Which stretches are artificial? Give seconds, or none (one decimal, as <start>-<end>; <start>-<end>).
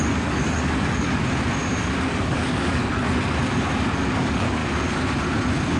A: 0.0-1.2; 2.2-2.8; 4.1-4.6